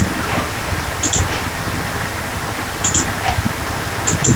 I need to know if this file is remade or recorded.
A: remade